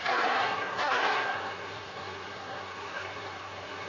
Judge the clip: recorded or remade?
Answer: remade